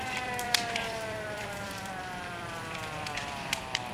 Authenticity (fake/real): fake